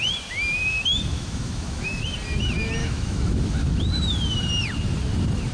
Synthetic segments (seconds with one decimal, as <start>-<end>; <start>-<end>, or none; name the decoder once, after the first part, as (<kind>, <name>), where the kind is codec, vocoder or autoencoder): 1.1-2.0 (autoencoder, DAC-VAE); 2.8-3.3